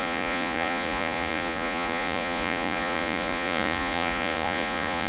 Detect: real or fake fake